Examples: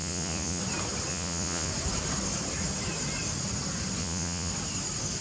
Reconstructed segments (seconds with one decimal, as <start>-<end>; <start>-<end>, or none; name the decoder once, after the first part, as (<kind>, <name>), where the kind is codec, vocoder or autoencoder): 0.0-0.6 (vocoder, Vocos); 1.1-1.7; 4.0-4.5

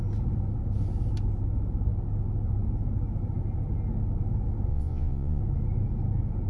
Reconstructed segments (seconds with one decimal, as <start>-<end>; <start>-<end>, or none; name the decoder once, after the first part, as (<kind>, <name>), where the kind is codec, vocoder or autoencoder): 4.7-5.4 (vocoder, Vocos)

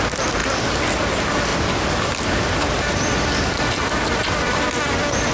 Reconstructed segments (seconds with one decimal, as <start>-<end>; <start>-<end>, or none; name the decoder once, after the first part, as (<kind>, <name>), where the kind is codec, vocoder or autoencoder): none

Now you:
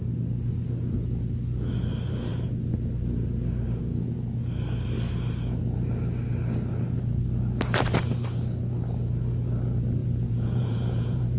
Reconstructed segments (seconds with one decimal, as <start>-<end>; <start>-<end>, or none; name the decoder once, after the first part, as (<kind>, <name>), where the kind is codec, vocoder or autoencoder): 10.0-11.4 (vocoder, Vocos)